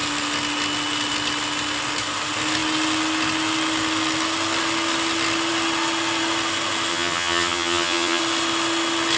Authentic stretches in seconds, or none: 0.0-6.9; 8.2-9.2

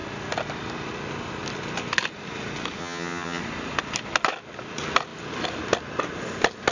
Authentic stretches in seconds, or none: 0.0-2.8; 3.4-6.7

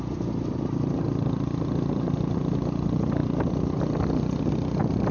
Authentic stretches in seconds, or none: 0.0-5.1

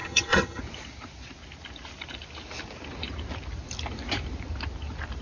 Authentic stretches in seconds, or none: 0.6-5.2

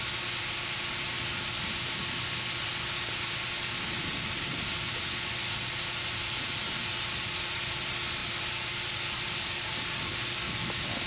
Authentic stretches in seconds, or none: 0.0-11.1

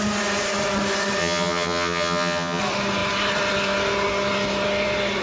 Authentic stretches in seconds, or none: 0.0-1.2; 2.6-5.2

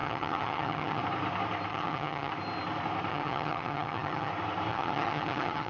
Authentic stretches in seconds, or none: 1.0-1.7; 2.3-3.1; 4.3-4.7